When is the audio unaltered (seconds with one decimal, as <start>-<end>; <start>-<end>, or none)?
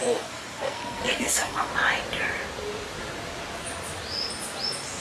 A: 1.7-5.0